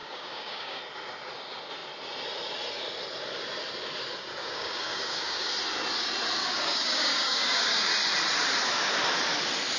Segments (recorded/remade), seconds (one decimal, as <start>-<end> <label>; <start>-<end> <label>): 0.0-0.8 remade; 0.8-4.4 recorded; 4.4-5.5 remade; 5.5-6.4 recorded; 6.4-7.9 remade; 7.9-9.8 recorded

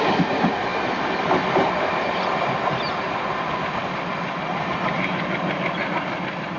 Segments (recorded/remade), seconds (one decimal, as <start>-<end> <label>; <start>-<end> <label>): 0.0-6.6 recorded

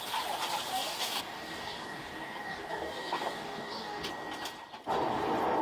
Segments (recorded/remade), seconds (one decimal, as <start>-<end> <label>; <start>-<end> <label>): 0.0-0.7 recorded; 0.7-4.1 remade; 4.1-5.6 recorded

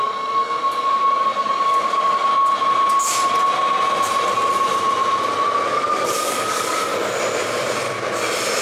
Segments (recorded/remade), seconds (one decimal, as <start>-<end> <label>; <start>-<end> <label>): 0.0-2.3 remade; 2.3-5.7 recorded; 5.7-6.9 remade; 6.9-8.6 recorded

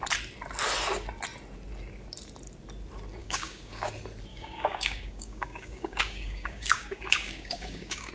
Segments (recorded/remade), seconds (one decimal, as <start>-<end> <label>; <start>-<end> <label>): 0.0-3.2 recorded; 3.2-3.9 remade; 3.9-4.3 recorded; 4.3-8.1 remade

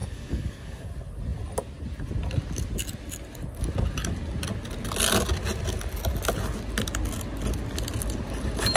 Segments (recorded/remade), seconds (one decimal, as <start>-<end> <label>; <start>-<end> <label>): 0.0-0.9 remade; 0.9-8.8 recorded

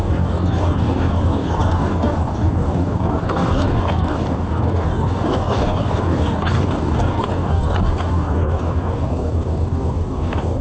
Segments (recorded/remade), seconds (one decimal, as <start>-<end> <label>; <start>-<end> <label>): 0.0-10.6 remade